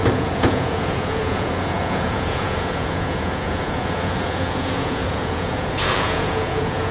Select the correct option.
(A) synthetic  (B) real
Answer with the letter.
A